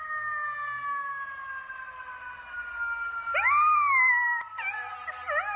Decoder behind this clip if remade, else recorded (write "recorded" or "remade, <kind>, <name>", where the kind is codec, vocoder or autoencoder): recorded